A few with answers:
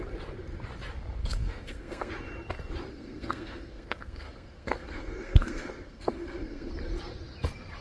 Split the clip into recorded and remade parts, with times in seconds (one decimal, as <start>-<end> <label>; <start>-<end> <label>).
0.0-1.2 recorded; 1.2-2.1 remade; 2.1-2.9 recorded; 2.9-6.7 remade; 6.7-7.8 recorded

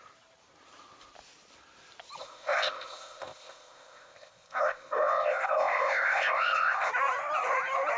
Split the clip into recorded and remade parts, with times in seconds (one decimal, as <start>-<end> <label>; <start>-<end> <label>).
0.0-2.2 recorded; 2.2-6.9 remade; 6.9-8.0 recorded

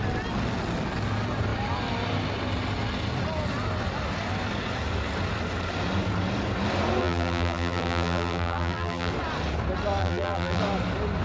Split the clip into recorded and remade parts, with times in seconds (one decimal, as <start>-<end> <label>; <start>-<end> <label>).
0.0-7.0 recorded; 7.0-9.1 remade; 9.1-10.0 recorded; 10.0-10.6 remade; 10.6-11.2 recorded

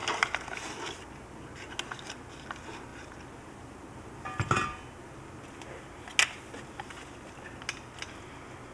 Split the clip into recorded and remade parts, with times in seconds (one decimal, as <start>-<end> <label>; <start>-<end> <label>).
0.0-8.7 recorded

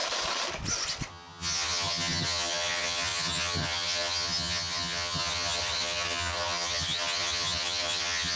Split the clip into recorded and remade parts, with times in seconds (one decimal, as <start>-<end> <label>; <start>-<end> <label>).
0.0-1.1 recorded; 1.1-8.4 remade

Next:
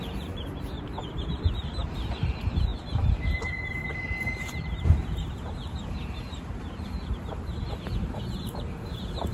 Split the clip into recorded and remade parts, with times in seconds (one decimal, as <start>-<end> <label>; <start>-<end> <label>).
0.0-9.3 remade